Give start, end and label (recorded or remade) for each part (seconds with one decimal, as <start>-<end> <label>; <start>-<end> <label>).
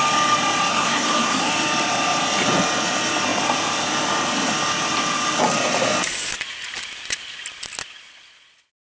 0.0-0.7 recorded; 0.7-1.5 remade; 1.5-8.8 recorded